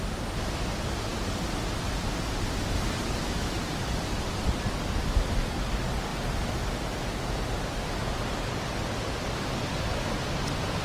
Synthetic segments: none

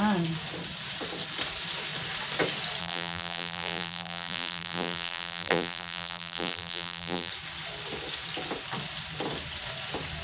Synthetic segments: 2.8-7.3

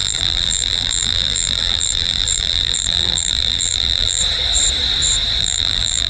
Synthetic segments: 0.0-4.2; 5.4-6.1

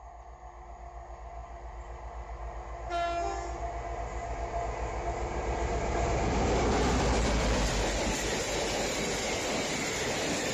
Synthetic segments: none

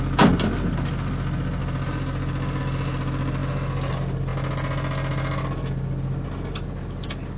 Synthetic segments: none